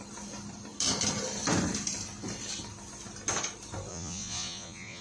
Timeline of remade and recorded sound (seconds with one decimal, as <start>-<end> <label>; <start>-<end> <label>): 0.0-3.9 recorded; 3.9-5.0 remade